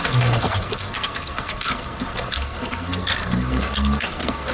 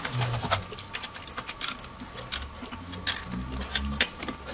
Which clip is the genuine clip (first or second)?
second